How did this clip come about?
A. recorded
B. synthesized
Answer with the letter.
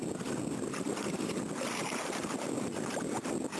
A